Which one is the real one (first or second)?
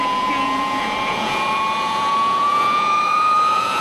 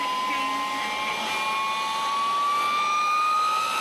second